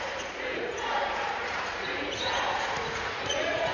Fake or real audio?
fake